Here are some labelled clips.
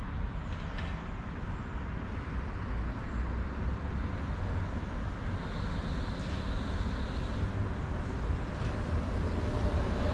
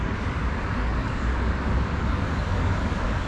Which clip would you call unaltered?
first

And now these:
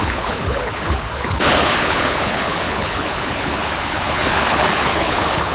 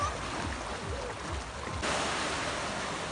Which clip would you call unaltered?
second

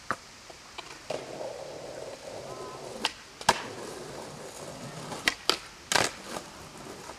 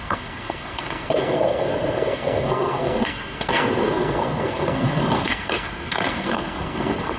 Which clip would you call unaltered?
first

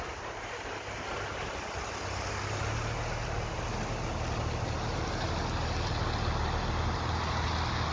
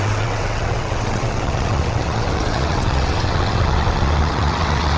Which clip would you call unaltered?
first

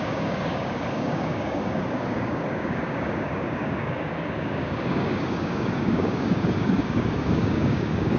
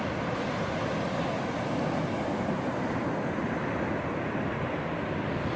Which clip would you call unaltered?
second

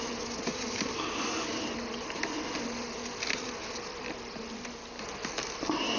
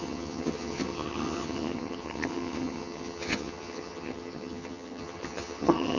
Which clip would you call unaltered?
first